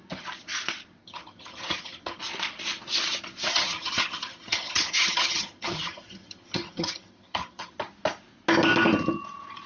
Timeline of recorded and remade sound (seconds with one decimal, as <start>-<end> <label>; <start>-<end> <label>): 0.0-1.0 recorded; 1.0-2.2 remade; 2.2-3.5 recorded; 3.5-7.7 remade; 7.7-9.7 recorded